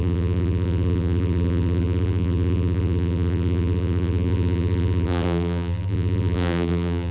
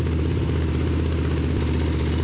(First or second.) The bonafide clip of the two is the second